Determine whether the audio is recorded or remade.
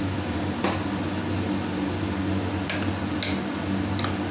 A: recorded